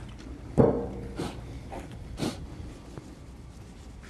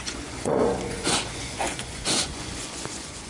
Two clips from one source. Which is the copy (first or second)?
second